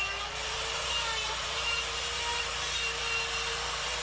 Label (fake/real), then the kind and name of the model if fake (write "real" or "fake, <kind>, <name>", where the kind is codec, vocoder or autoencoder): fake, vocoder, BigVGAN v2